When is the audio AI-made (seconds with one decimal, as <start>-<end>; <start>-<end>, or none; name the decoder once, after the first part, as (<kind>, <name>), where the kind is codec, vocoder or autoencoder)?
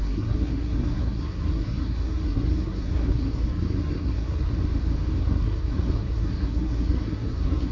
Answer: 0.0-4.5 (codec, SNAC); 5.2-7.7